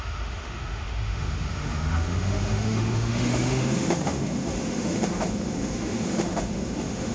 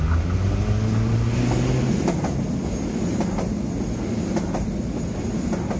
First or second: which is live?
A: second